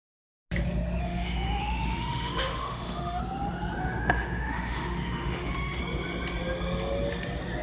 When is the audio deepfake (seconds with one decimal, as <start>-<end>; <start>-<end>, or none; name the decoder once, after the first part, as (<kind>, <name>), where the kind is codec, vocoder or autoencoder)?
1.0-3.2 (autoencoder, DAC-VAE); 3.8-5.8